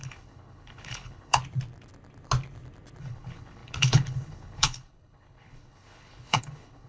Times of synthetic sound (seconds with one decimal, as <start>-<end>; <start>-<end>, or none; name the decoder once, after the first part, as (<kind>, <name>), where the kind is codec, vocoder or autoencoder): 0.0-1.4 (codec, HILCodec); 3.0-6.9